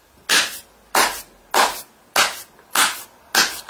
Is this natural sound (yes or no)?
yes